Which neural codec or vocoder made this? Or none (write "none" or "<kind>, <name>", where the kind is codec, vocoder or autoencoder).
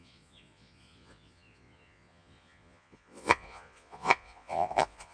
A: vocoder, Vocos